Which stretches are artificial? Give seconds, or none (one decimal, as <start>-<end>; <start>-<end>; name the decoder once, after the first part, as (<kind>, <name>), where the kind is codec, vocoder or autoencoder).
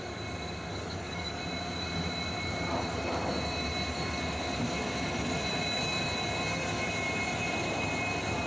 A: 0.7-1.4 (codec, DAC)